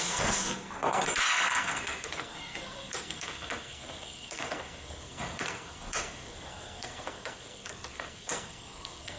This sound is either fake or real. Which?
fake